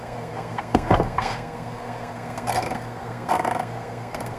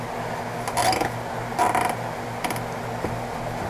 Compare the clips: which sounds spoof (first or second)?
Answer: first